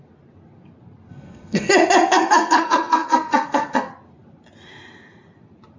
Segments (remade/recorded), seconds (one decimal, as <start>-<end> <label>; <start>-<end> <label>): 0.0-1.1 recorded; 1.1-1.7 remade; 1.7-2.1 recorded; 2.1-3.9 remade; 3.9-5.8 recorded